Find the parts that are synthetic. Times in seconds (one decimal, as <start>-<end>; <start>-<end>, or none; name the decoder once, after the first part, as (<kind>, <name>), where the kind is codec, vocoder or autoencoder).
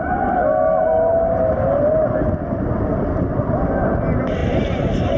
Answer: 4.4-5.2 (vocoder, BigVGAN v2)